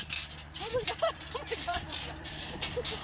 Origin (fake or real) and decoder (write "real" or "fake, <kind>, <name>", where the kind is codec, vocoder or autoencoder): fake, vocoder, BigVGAN v2